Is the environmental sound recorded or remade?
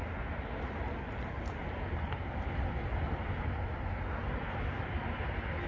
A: recorded